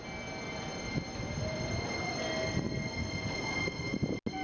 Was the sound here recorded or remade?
recorded